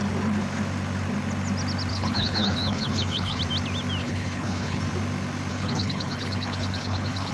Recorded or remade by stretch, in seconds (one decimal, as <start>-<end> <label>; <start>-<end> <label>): 0.0-1.9 recorded; 1.9-3.4 remade; 3.4-4.0 recorded; 4.0-4.8 remade; 4.8-5.5 recorded; 5.5-7.3 remade

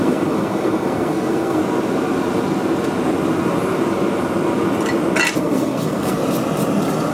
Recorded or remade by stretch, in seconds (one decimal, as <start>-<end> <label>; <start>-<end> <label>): 0.0-1.6 remade; 1.6-5.4 recorded; 5.4-6.2 remade; 6.2-7.1 recorded

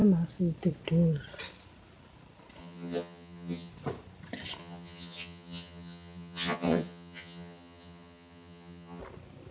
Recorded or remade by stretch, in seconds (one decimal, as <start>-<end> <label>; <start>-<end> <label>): 0.0-2.6 recorded; 2.6-3.7 remade; 3.7-4.6 recorded; 4.6-9.0 remade; 9.0-9.5 recorded

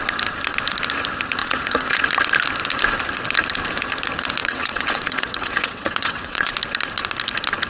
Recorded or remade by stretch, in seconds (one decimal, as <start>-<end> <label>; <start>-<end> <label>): 0.0-1.4 recorded; 1.4-2.0 remade; 2.0-4.4 recorded; 4.4-6.5 remade; 6.5-7.7 recorded

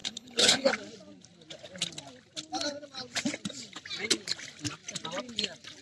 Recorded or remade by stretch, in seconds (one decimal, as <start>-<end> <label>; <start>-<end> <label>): 0.0-0.7 remade; 0.7-5.8 recorded

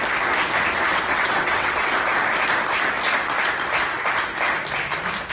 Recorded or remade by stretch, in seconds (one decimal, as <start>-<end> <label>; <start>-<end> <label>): 0.0-0.9 recorded; 0.9-1.9 remade; 1.9-5.3 recorded